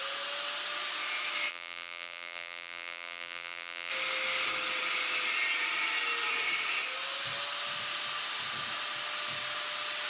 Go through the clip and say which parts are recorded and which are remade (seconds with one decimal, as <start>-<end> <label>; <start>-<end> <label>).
0.0-1.5 recorded; 1.5-3.9 remade; 3.9-10.1 recorded